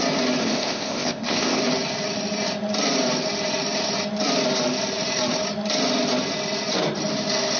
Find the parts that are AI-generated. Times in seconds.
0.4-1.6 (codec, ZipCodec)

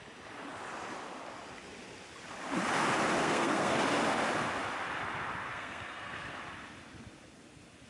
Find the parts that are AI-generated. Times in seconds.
3.2-3.8 (codec, SNAC); 5.5-6.3

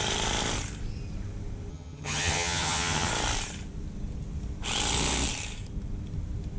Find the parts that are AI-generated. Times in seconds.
1.7-3.1 (vocoder, HiFi-GAN)

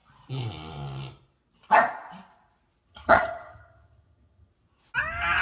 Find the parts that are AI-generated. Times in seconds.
2.9-4.5 (vocoder, HiFi-GAN)

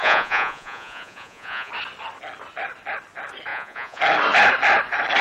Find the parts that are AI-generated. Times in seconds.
0.0-1.7 (vocoder, Vocos); 3.5-4.0

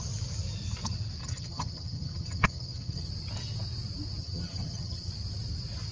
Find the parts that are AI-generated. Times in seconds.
1.2-3.1 (vocoder, HiFi-GAN); 4.2-5.1

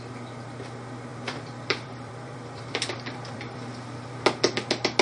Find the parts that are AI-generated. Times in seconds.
1.1-4.1 (vocoder, BigVGAN v2)

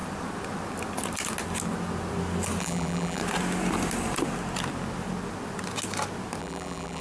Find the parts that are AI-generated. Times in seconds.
2.6-3.2 (vocoder, BigVGAN v2); 6.4-7.0